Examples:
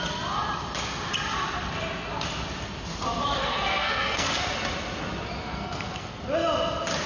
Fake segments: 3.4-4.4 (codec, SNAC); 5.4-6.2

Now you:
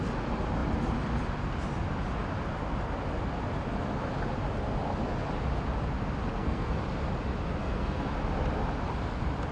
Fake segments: 6.3-6.8 (codec, SNAC); 7.6-8.1

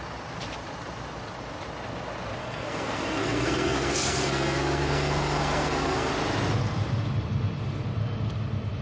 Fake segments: 2.4-6.1 (codec, SNAC)